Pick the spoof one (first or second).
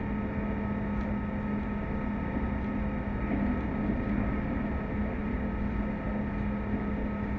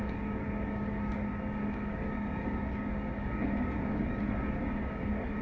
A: second